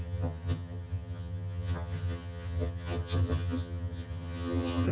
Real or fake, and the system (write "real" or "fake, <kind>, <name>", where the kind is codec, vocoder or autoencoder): fake, vocoder, HiFi-GAN